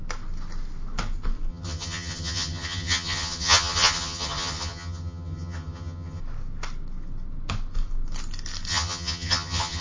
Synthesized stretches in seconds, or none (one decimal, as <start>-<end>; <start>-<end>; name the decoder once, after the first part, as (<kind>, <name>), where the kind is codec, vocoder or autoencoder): 1.5-6.2 (vocoder, HiFi-GAN); 8.7-9.8